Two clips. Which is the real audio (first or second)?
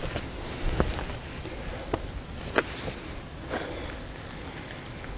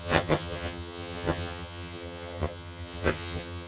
first